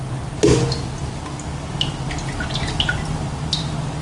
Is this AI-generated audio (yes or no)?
no